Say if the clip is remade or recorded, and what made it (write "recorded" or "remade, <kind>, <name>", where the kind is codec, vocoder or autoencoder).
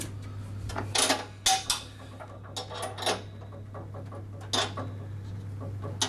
recorded